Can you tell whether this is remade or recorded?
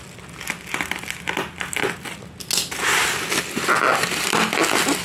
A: recorded